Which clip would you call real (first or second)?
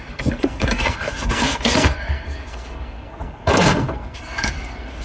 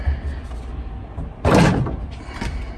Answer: second